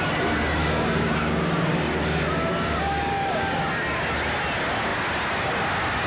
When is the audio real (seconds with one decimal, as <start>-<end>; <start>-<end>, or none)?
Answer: 0.0-0.6; 3.6-6.1